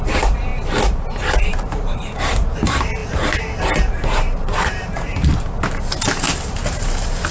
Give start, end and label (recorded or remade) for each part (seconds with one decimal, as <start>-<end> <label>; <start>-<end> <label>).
0.0-0.5 remade; 0.5-1.4 recorded; 1.4-3.0 remade; 3.0-3.6 recorded; 3.6-5.3 remade; 5.3-6.5 recorded; 6.5-7.3 remade